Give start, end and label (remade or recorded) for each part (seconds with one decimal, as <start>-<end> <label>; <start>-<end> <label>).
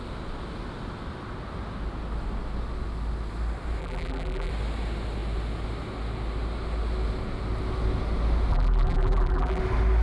0.0-3.8 recorded; 3.8-4.5 remade; 4.5-8.5 recorded; 8.5-9.6 remade; 9.6-10.0 recorded